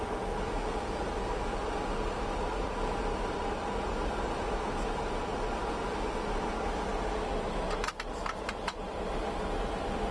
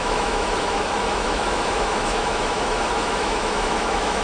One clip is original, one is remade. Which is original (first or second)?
first